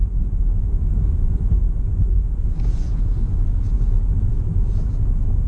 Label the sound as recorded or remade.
remade